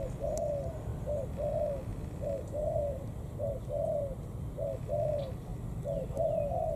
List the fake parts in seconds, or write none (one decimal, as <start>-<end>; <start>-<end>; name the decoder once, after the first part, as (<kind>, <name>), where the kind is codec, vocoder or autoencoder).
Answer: 0.9-1.5 (vocoder, BigVGAN v2); 1.9-4.9; 5.5-6.8